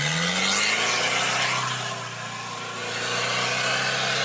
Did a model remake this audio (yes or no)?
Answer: no